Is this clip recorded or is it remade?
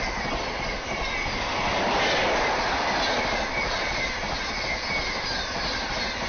recorded